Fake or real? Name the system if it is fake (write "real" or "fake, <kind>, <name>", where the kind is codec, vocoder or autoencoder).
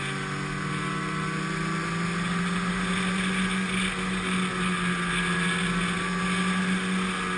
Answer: real